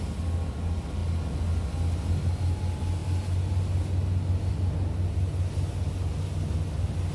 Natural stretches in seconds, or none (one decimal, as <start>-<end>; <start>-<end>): 0.0-7.1